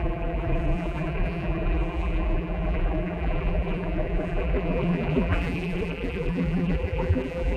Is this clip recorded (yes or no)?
no